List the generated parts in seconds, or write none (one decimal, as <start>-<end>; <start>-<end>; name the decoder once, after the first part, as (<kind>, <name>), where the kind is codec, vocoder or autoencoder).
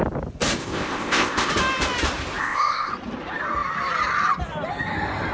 0.6-1.5 (codec, ZipCodec); 2.4-2.9